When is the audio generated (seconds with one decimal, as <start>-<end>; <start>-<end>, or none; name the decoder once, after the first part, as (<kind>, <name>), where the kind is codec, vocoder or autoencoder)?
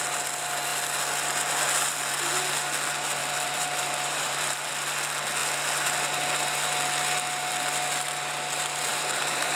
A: 3.2-4.7 (vocoder, BigVGAN v2); 8.9-9.6